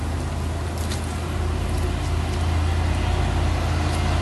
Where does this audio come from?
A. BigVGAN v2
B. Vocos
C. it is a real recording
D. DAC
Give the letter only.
C